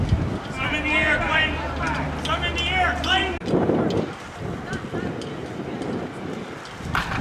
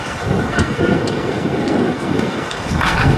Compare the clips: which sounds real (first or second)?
first